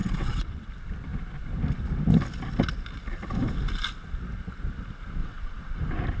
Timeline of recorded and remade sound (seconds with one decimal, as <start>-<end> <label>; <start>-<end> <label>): 0.0-0.7 remade; 0.7-5.2 recorded; 5.2-5.8 remade; 5.8-6.2 recorded